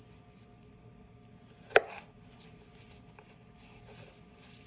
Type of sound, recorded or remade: recorded